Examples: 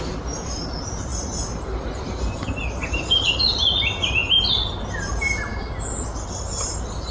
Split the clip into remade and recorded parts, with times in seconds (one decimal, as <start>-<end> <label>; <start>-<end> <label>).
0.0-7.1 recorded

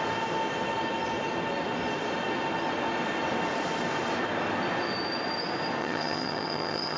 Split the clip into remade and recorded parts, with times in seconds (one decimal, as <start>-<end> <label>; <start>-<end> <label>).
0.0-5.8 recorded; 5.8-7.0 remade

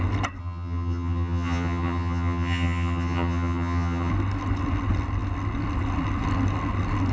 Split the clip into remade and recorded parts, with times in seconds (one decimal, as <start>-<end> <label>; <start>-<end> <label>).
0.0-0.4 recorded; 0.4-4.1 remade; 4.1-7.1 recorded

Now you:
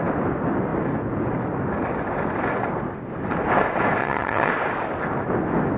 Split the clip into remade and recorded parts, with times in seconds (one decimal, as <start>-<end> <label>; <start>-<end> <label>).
0.0-4.0 recorded; 4.0-4.5 remade; 4.5-5.8 recorded

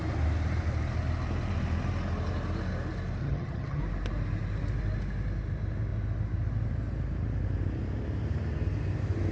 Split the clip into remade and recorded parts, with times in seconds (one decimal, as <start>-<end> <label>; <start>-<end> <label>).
0.0-3.2 recorded; 3.2-3.8 remade; 3.8-9.3 recorded

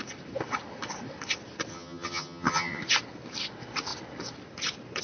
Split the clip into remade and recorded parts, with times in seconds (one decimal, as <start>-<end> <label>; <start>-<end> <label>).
0.0-1.7 recorded; 1.7-2.8 remade; 2.8-5.0 recorded

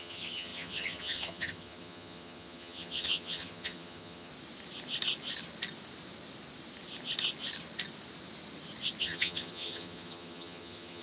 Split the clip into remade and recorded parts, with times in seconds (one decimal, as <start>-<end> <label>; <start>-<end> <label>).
0.0-4.3 remade; 4.3-9.0 recorded; 9.0-11.0 remade

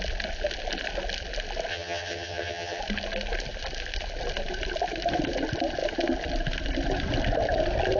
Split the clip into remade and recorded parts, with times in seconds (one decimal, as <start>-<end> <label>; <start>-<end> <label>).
0.0-1.7 recorded; 1.7-2.8 remade; 2.8-8.0 recorded